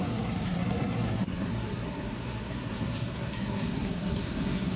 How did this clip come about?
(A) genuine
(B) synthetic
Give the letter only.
B